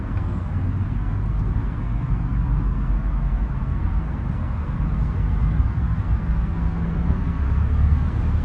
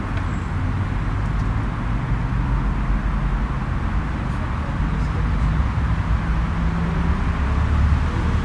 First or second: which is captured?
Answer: second